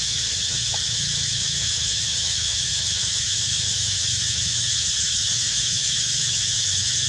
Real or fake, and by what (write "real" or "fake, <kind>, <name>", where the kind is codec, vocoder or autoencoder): fake, autoencoder, DAC-VAE